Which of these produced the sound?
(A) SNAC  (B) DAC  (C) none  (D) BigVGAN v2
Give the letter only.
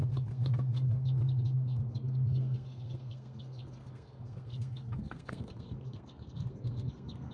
A